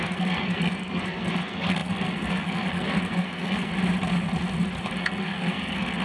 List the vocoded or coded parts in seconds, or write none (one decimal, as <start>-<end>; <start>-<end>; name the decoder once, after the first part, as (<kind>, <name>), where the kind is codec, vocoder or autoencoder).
0.0-3.7 (codec, SNAC); 5.0-6.0